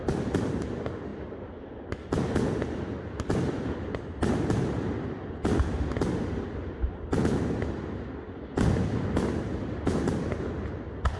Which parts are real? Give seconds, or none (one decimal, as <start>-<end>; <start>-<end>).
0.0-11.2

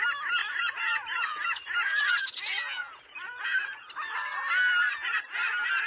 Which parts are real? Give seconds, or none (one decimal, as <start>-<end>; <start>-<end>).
0.0-0.4; 3.9-5.9

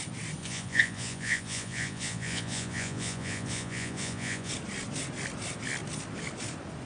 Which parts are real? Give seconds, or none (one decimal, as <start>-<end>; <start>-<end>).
0.0-0.4; 4.5-6.9